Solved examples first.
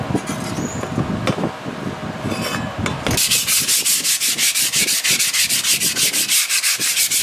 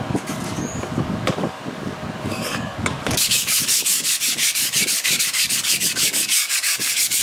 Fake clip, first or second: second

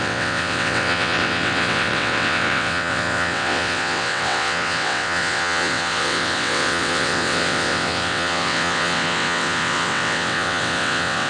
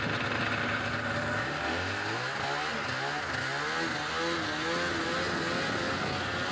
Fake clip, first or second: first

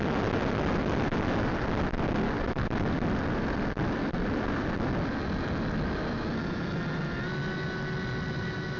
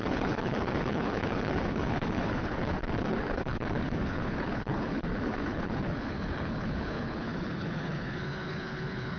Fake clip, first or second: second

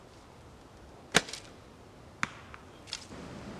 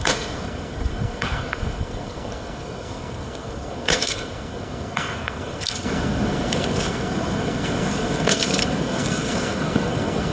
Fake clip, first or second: second